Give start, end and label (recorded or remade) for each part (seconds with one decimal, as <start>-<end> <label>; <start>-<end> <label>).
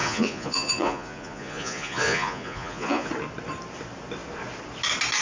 0.0-3.1 remade; 3.1-5.2 recorded